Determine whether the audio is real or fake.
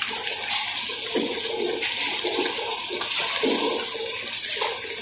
real